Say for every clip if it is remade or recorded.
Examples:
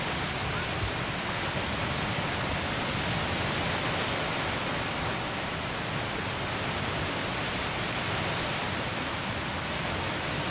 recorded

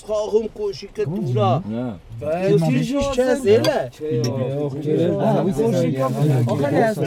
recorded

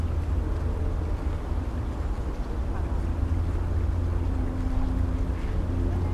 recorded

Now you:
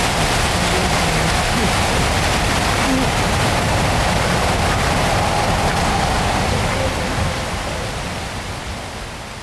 recorded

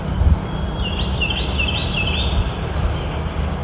recorded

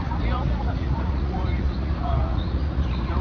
remade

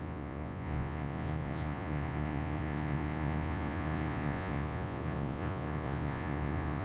remade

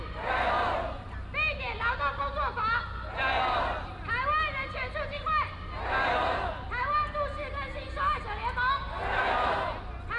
recorded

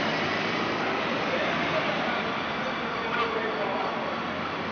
recorded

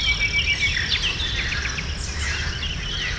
recorded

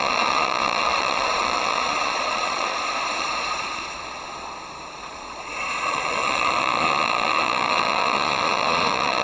remade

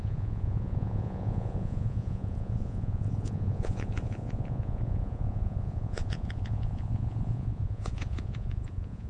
remade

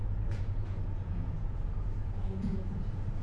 remade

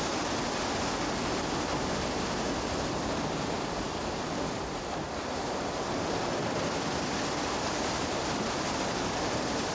recorded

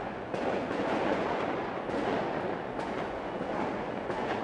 remade